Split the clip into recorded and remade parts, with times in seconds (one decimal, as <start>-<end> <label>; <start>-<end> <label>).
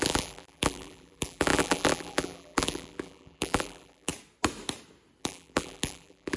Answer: 0.0-4.1 remade; 4.1-5.2 recorded; 5.2-6.4 remade